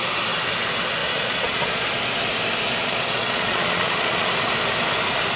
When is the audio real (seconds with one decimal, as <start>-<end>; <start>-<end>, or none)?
0.0-1.0; 1.8-2.8; 4.3-5.4